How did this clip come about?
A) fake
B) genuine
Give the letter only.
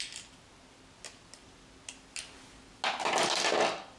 B